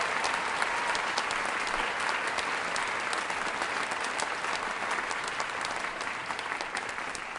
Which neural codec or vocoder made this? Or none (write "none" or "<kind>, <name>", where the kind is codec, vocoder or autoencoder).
none